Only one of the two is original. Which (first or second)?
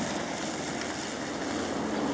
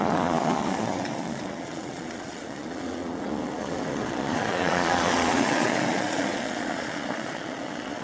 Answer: first